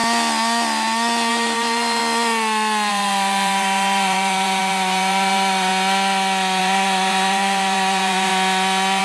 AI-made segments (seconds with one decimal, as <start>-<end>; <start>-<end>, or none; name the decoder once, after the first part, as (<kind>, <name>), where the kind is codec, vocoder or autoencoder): 1.3-2.0 (vocoder, BigVGAN v2); 2.9-5.7; 6.6-8.3